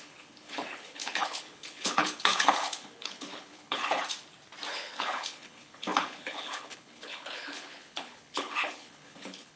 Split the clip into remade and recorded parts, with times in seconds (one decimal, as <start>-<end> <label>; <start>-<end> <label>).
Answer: 0.0-4.0 remade; 4.0-4.7 recorded; 4.7-9.6 remade